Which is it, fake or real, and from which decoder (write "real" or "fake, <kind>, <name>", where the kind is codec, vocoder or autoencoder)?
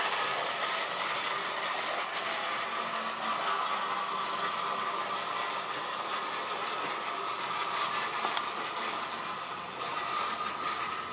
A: real